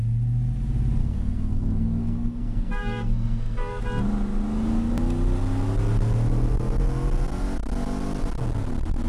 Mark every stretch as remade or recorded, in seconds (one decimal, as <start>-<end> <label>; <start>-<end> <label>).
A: 0.0-1.0 recorded; 1.0-3.8 remade; 3.8-9.1 recorded